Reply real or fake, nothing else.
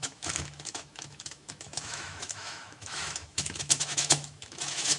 fake